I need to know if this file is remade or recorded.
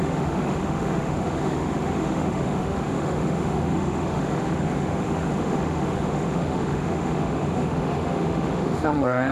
remade